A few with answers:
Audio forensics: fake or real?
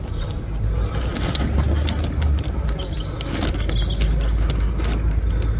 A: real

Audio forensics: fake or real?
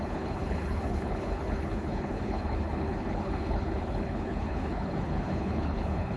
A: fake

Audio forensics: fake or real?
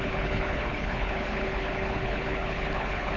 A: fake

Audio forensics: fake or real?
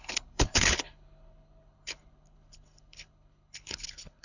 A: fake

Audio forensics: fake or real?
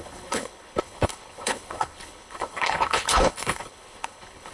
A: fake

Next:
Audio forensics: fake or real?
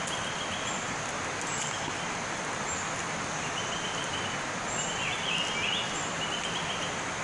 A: real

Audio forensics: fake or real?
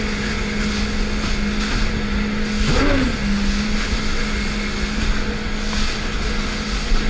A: real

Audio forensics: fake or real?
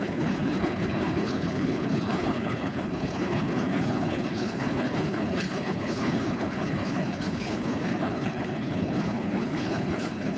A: fake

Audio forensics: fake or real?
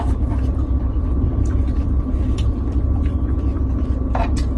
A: real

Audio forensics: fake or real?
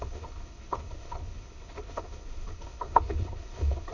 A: fake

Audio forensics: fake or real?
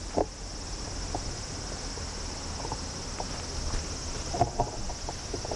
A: real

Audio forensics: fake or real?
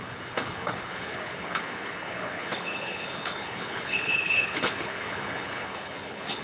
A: fake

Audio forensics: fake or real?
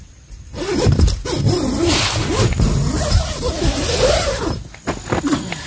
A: real